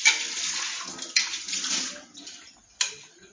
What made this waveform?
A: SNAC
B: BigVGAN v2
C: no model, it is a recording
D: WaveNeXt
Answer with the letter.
C